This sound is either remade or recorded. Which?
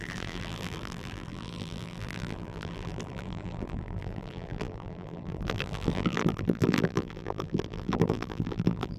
remade